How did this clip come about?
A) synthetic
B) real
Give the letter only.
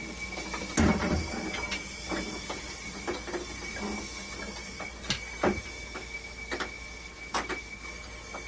B